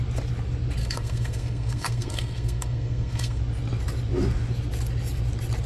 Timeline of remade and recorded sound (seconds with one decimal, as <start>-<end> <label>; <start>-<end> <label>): 0.0-0.8 recorded; 0.8-3.4 remade; 3.4-5.7 recorded